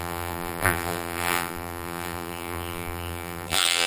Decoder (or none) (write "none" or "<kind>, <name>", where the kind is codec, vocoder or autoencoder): vocoder, BigVGAN v2